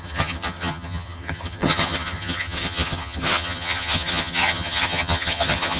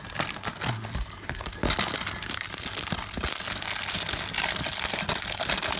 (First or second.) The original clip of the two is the second